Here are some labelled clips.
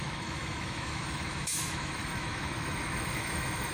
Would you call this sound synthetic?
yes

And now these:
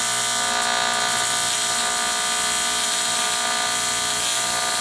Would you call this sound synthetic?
no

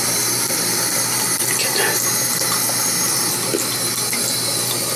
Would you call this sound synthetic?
no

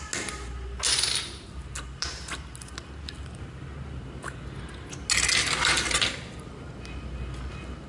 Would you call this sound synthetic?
no